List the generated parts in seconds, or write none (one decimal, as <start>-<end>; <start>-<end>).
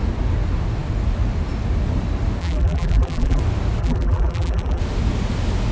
2.4-3.4; 3.8-4.8